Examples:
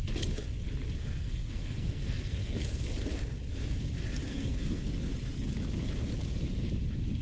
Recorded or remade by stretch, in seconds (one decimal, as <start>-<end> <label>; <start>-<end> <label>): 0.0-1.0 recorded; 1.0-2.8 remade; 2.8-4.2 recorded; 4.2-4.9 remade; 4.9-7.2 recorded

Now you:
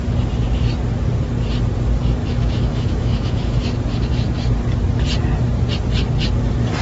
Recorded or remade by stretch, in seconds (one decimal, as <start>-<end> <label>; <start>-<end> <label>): 0.0-2.2 recorded; 2.2-3.6 remade; 3.6-6.8 recorded

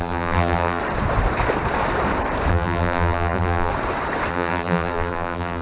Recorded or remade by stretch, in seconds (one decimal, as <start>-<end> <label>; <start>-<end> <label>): 0.0-0.8 remade; 0.8-2.5 recorded; 2.5-3.7 remade; 3.7-4.3 recorded; 4.3-5.6 remade

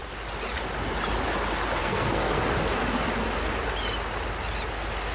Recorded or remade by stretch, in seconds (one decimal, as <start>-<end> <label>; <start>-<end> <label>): 0.0-1.8 recorded; 1.8-2.4 remade; 2.4-5.1 recorded

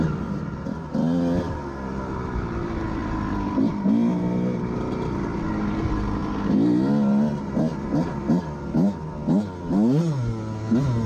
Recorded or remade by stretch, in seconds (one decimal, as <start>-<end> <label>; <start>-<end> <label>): 0.0-3.0 recorded; 3.0-3.7 remade; 3.7-7.7 recorded; 7.7-8.3 remade; 8.3-11.1 recorded

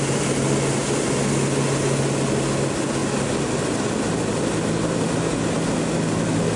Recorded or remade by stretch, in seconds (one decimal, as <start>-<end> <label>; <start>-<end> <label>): 0.0-6.6 recorded

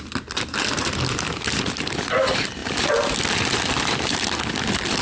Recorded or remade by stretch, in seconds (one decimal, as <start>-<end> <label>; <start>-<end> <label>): 0.0-5.0 recorded

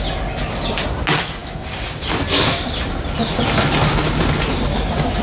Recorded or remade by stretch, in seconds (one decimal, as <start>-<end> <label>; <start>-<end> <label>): 0.0-5.2 recorded